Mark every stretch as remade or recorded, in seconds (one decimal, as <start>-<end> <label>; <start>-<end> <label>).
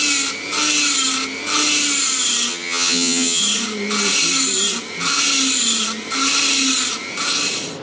0.0-2.5 recorded; 2.5-3.4 remade; 3.4-7.8 recorded